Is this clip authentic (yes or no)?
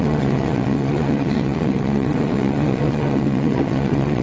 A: no